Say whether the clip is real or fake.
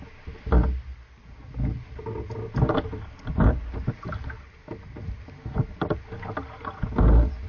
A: real